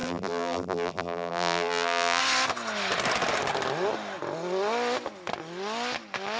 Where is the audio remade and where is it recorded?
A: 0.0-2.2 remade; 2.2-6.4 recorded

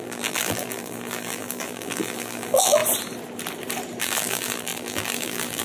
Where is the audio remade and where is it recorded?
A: 0.0-2.8 remade; 2.8-4.0 recorded; 4.0-5.6 remade